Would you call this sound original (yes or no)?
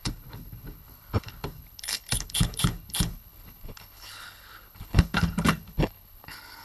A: no